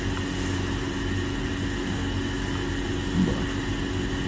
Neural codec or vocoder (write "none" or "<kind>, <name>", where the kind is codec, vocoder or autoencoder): none